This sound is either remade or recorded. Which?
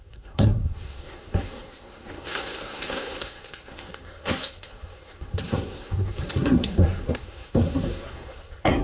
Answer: remade